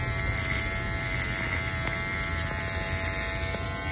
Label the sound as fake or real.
real